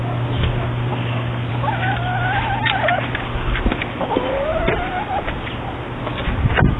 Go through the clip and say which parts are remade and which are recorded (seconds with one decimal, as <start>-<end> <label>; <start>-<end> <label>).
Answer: 0.0-6.8 recorded